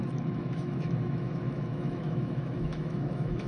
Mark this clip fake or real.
fake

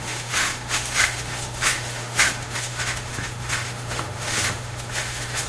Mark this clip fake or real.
fake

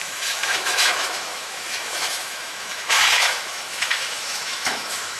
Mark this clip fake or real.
fake